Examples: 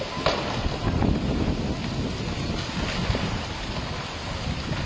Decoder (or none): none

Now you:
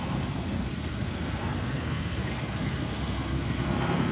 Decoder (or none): codec, SNAC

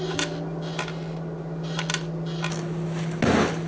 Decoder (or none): none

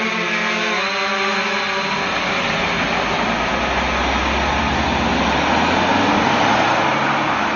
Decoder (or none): none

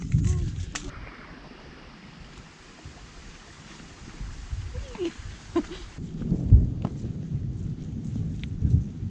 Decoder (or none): none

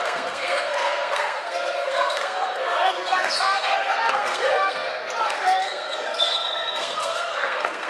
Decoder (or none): codec, SNAC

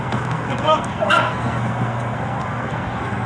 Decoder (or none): codec, SNAC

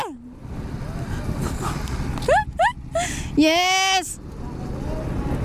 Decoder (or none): none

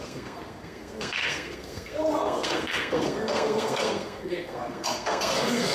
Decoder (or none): codec, SNAC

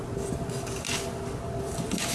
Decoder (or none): none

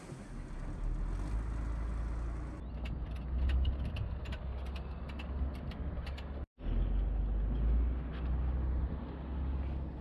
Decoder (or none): none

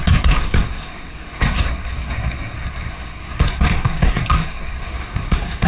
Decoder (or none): codec, SNAC